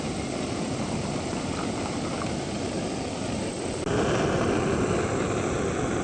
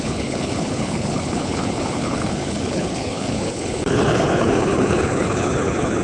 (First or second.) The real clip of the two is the first